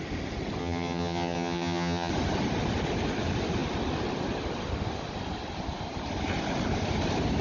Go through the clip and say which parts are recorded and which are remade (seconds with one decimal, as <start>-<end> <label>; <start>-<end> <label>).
0.0-0.6 recorded; 0.6-2.1 remade; 2.1-7.4 recorded